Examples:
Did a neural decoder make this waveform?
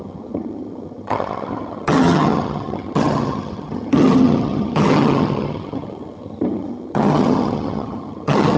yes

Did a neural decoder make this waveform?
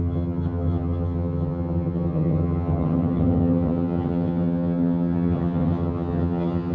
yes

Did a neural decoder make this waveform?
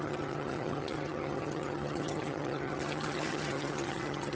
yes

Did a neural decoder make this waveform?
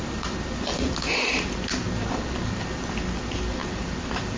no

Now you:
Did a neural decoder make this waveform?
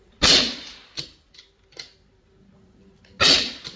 no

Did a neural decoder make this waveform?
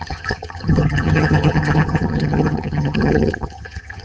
yes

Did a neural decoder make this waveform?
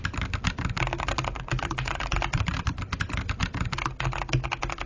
no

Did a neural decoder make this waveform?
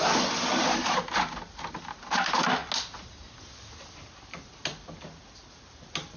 no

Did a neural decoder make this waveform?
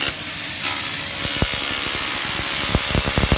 no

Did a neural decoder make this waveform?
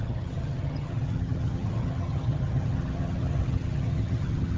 yes